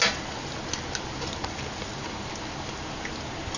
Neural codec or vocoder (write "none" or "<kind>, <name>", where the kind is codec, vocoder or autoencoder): none